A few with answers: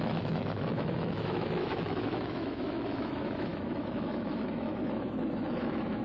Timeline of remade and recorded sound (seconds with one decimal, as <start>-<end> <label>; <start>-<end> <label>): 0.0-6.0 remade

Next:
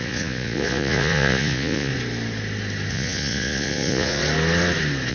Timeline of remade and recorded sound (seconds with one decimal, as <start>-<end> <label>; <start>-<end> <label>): 0.0-1.9 remade; 1.9-2.9 recorded; 2.9-4.2 remade; 4.2-5.1 recorded

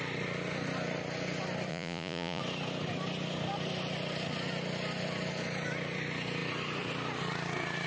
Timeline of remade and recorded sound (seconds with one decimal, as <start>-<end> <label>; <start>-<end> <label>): 0.0-1.7 recorded; 1.7-2.4 remade; 2.4-7.9 recorded

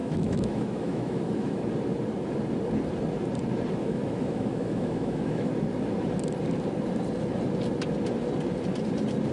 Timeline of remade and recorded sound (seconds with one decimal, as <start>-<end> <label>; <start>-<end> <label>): 0.0-1.6 remade; 1.6-3.8 recorded; 3.8-5.5 remade; 5.5-9.3 recorded

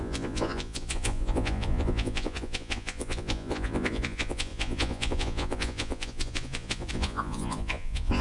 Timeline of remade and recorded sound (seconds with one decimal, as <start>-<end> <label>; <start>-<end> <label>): 0.0-8.2 remade

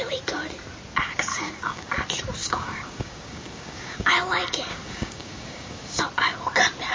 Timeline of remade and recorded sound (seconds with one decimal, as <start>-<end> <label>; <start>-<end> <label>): 0.0-1.3 recorded; 1.3-1.9 remade; 1.9-2.4 recorded; 2.4-4.1 remade; 4.1-4.7 recorded; 4.7-6.0 remade; 6.0-6.9 recorded

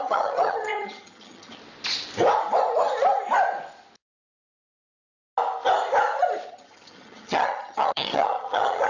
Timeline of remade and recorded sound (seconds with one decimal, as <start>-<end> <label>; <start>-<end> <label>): 0.0-1.6 remade; 1.6-6.5 recorded; 6.5-8.9 remade